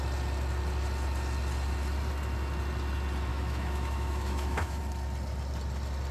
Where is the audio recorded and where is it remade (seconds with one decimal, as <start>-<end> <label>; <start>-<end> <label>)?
0.0-3.3 recorded; 3.3-4.8 remade; 4.8-6.1 recorded